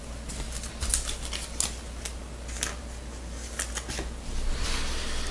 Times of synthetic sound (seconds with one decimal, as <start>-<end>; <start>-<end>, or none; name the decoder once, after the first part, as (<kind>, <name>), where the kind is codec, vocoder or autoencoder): none